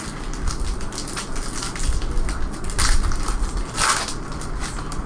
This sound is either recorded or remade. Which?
recorded